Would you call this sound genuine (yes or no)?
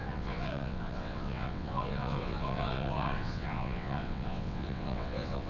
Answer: no